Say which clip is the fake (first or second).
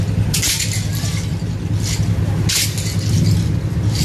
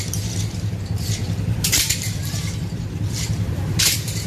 second